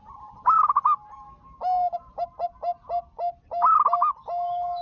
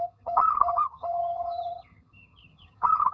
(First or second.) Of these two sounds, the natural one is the first